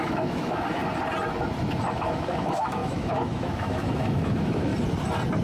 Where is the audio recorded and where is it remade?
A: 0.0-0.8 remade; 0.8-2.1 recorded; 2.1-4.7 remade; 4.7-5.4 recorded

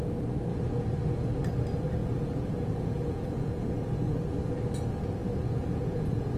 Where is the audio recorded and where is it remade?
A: 0.0-2.0 recorded; 2.0-4.6 remade; 4.6-5.2 recorded; 5.2-6.4 remade

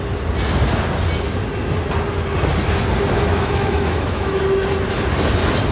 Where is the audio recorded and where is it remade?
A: 0.0-3.3 recorded; 3.3-4.4 remade; 4.4-5.7 recorded

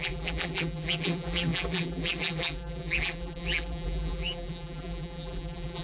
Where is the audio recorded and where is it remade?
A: 0.0-5.8 remade

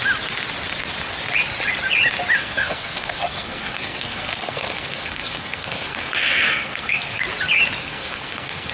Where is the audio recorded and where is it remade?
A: 0.0-2.4 recorded; 2.4-7.2 remade; 7.2-7.8 recorded; 7.8-8.7 remade

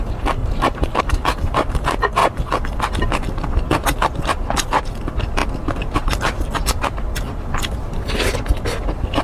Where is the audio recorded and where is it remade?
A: 0.0-0.4 recorded; 0.4-1.0 remade; 1.0-9.2 recorded

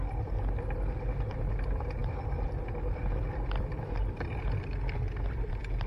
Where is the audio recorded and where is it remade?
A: 0.0-2.0 recorded; 2.0-5.5 remade; 5.5-5.9 recorded

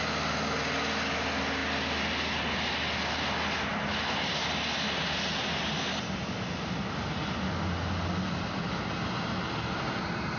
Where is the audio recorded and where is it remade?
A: 0.0-10.4 recorded